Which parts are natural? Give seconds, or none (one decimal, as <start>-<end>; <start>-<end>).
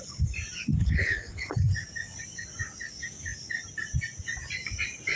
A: 0.0-0.7; 1.5-5.2